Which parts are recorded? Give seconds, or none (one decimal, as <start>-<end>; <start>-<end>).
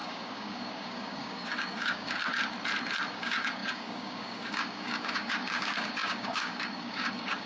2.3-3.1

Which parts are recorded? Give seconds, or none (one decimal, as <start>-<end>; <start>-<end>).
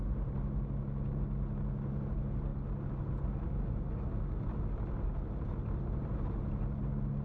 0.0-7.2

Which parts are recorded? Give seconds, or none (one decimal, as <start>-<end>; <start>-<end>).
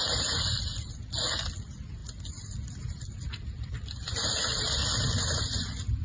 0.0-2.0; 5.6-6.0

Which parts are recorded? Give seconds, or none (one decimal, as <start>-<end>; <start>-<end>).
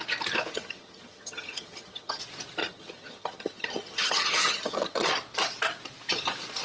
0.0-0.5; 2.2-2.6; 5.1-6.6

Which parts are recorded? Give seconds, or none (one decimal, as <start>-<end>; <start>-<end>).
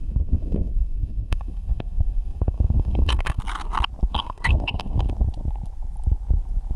3.4-4.1; 5.1-6.8